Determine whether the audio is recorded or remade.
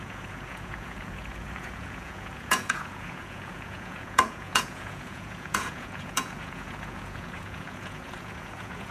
remade